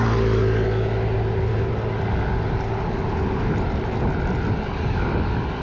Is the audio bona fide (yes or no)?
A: yes